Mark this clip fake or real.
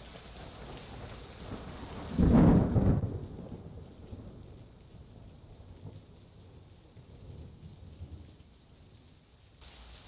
real